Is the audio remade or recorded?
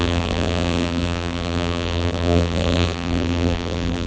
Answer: remade